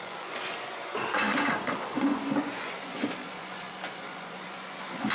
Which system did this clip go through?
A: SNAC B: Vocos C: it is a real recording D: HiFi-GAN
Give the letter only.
B